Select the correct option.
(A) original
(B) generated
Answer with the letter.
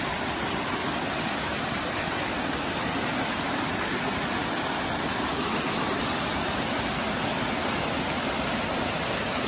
A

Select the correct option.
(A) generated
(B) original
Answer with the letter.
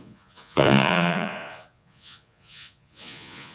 A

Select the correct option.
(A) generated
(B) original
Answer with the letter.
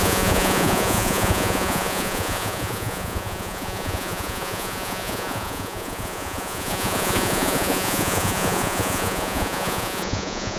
A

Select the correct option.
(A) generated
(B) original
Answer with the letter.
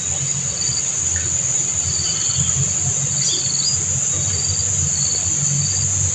B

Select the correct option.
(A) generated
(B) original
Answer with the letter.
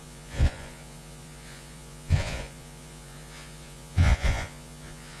A